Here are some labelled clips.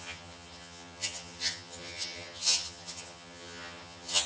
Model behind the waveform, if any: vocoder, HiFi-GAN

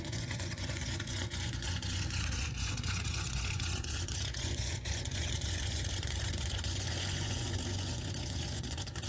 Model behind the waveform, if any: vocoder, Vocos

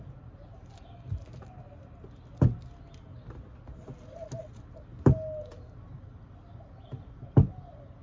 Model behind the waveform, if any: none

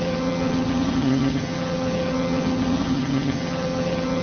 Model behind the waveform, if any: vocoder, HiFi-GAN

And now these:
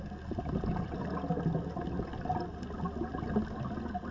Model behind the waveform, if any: none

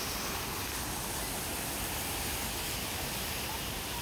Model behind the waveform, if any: none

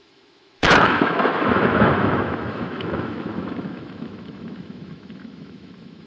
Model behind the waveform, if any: autoencoder, DAC-VAE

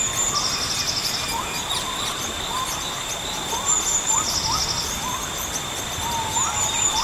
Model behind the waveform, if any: none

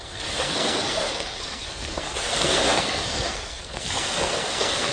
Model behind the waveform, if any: codec, SNAC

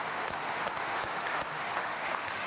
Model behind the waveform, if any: autoencoder, DAC-VAE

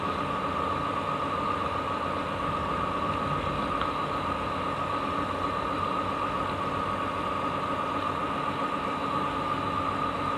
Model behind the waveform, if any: none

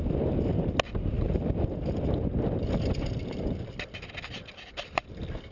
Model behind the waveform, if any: vocoder, BigVGAN v2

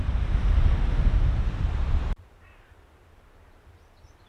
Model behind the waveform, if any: vocoder, BigVGAN v2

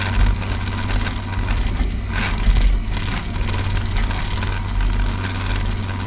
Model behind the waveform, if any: none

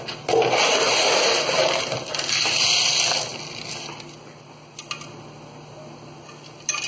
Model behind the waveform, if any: none